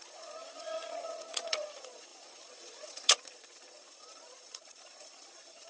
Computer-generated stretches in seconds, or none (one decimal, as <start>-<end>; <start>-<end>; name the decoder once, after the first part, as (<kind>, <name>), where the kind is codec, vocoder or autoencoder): 0.0-5.7 (vocoder, Vocos)